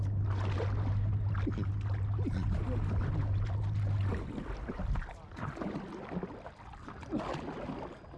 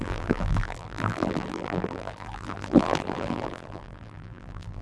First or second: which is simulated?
second